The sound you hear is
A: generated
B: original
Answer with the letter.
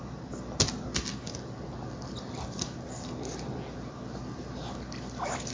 B